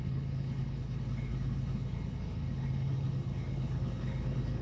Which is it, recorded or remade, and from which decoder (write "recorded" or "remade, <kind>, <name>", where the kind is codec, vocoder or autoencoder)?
remade, codec, HILCodec